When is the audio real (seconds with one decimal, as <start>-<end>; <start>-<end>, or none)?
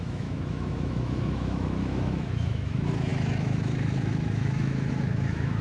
none